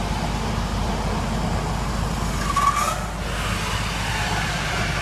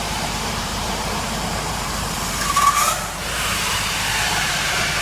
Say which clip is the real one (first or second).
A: first